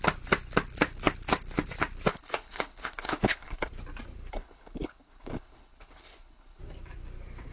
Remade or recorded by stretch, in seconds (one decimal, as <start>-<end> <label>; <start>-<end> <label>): 0.0-2.1 recorded; 2.1-3.7 remade; 3.7-4.3 recorded; 4.3-6.6 remade; 6.6-7.5 recorded